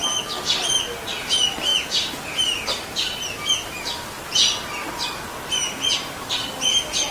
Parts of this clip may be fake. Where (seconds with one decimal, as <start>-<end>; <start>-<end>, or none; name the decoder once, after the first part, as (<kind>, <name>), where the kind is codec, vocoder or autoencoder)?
none